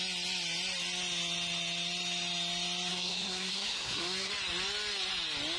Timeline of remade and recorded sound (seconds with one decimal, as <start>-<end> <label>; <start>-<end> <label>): 0.0-2.9 recorded; 2.9-4.3 remade; 4.3-5.6 recorded